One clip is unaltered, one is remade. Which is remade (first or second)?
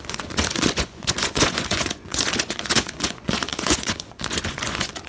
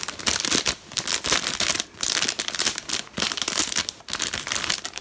first